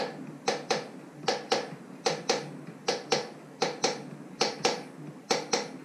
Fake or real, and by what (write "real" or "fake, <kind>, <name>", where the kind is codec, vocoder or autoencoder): real